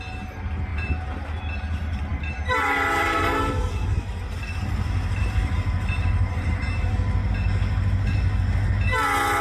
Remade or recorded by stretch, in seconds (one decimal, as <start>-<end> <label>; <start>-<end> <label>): 0.0-0.7 recorded; 0.7-1.4 remade; 1.4-2.1 recorded; 2.1-6.9 remade; 6.9-9.4 recorded